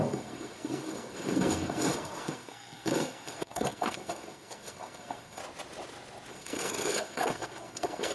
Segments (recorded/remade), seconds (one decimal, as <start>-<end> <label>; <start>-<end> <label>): 0.0-5.4 remade; 5.4-6.3 recorded; 6.3-8.1 remade